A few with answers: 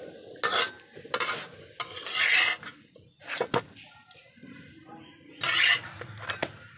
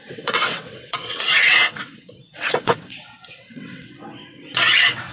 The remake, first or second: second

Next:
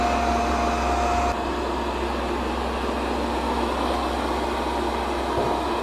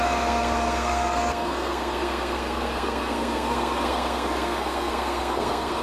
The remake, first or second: second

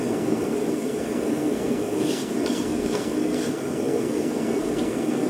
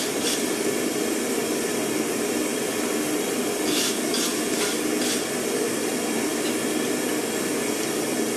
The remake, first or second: first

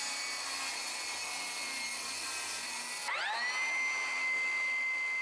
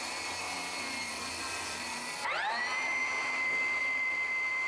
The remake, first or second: second